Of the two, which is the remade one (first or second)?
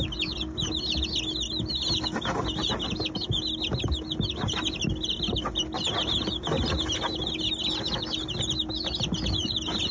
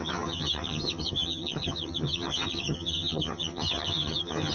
second